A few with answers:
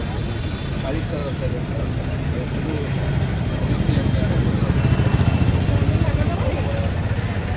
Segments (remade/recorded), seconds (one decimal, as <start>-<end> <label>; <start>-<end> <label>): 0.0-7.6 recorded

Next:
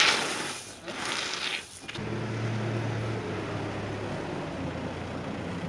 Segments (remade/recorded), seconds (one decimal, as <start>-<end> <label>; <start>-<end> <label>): 0.0-5.7 recorded

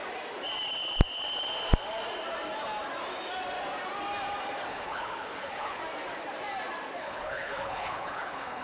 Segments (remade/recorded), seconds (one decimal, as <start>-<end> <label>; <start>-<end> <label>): 0.0-4.7 recorded; 4.7-5.8 remade; 5.8-7.0 recorded; 7.0-8.6 remade

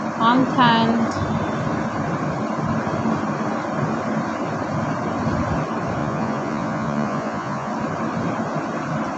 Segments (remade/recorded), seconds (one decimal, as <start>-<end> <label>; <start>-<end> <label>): 0.0-6.0 recorded; 6.0-7.7 remade; 7.7-9.2 recorded

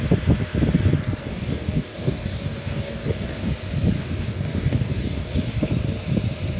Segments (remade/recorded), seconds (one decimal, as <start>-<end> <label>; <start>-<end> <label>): 0.0-1.2 recorded; 1.2-3.5 remade; 3.5-4.0 recorded; 4.0-5.7 remade; 5.7-6.6 recorded